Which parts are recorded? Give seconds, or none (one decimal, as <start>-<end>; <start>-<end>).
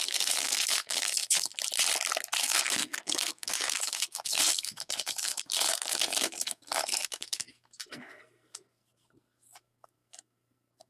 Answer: 1.5-2.4